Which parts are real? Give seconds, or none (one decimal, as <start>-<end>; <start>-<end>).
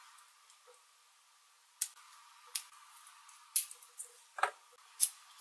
0.0-5.4